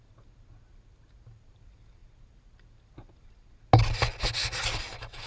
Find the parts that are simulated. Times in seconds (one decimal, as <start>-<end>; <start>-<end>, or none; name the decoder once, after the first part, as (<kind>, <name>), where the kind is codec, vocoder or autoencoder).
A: none